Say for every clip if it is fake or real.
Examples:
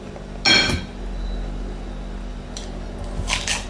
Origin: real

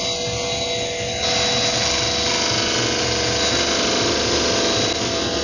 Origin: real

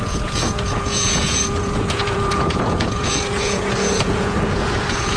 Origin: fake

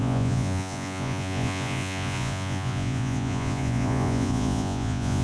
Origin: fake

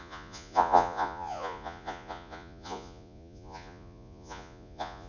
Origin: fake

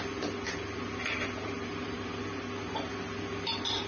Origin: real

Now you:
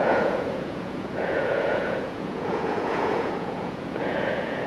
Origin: fake